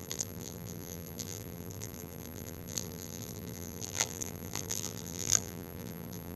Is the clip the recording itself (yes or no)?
no